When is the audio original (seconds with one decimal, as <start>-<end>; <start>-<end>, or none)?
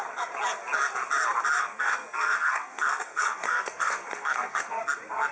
0.0-1.6; 4.8-5.3